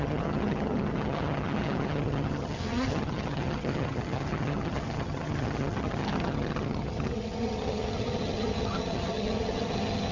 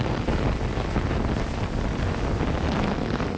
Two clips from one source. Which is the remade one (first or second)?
first